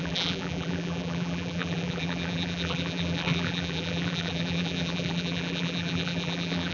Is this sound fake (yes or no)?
yes